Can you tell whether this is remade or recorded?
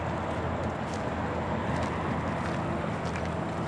recorded